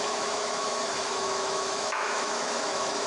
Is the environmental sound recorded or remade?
remade